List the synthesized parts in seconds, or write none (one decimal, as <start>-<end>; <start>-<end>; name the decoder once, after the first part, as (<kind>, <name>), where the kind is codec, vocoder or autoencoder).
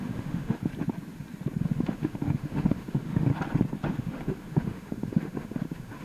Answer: 0.0-0.7 (autoencoder, DAC-VAE); 1.6-3.3; 3.9-6.0